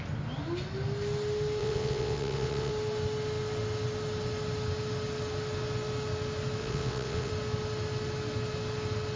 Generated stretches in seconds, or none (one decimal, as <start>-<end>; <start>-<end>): 1.6-2.7; 6.6-7.3